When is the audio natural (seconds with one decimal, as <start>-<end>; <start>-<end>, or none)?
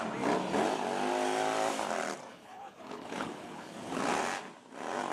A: 0.0-2.3; 4.0-5.1